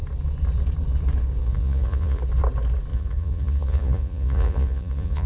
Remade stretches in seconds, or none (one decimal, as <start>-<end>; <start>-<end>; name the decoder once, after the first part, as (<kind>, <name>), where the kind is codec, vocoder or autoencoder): 1.4-2.2 (vocoder, Vocos); 2.9-5.3